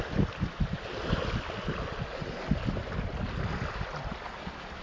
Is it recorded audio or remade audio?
recorded